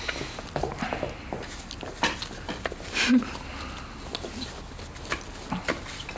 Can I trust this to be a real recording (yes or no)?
yes